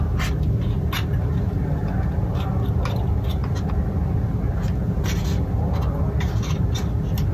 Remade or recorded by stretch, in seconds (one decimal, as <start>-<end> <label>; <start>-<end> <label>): 0.0-7.3 recorded